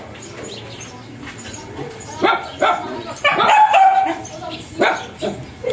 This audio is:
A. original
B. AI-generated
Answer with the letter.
A